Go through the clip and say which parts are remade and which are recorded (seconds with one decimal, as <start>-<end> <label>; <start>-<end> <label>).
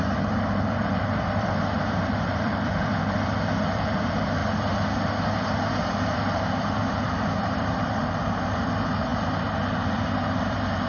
0.0-4.4 remade; 4.4-5.7 recorded; 5.7-10.9 remade